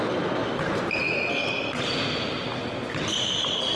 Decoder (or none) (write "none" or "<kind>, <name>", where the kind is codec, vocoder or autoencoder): none